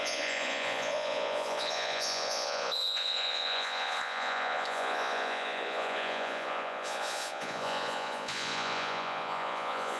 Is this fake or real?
fake